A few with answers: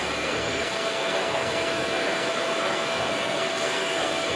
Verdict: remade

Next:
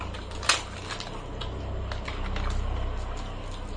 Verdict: recorded